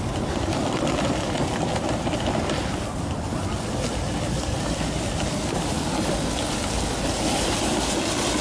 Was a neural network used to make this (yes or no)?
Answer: no